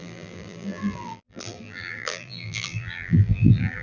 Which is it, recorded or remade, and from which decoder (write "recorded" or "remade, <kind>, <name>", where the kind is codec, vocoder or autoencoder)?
remade, vocoder, BigVGAN v2